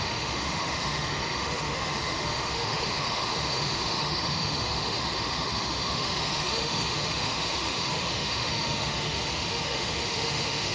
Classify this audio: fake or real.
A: fake